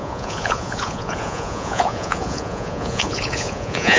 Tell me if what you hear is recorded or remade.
remade